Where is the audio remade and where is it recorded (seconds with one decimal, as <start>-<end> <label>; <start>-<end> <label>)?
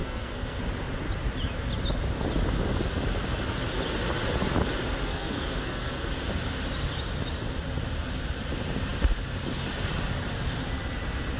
0.0-0.6 remade; 0.6-5.1 recorded; 5.1-6.1 remade; 6.1-11.4 recorded